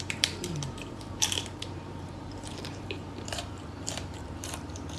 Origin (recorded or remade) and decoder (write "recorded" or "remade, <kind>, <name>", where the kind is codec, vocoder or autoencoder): remade, vocoder, BigVGAN v2